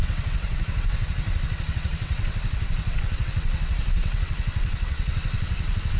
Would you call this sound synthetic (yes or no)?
yes